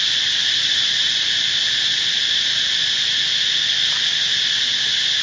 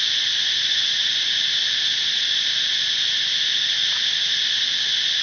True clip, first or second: second